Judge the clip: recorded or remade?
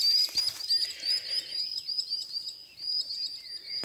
recorded